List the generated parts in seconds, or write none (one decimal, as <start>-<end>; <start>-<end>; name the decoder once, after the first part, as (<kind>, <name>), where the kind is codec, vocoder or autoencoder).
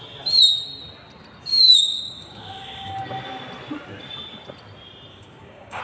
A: 1.7-3.0 (codec, DAC); 5.1-5.8